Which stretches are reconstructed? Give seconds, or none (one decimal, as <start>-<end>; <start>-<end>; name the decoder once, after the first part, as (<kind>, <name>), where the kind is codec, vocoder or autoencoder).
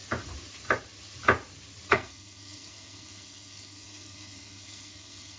1.9-5.4 (codec, SNAC)